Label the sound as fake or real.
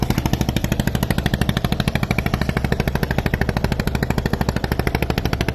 real